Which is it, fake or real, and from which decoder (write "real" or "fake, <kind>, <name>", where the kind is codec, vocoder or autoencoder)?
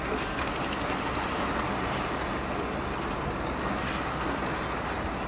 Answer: real